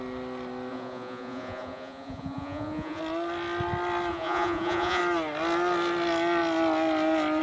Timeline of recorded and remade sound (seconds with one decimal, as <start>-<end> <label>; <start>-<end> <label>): 0.0-0.7 recorded; 0.7-3.0 remade; 3.0-4.1 recorded; 4.1-5.0 remade; 5.0-7.4 recorded